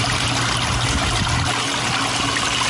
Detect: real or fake real